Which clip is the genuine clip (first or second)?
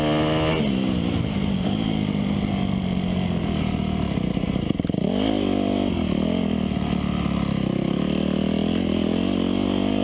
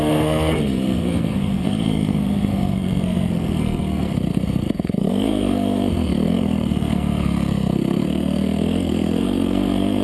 first